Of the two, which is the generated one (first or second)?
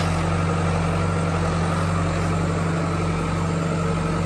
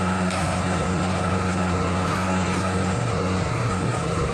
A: second